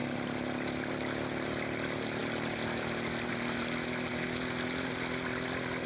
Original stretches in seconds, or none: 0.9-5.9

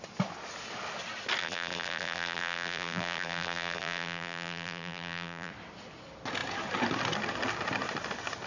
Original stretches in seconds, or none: 0.0-1.4; 5.5-8.5